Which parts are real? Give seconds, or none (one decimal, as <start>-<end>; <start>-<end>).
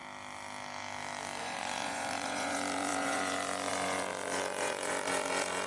0.0-1.4